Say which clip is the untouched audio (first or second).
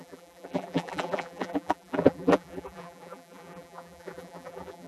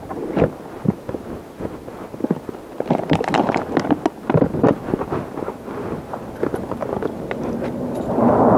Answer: second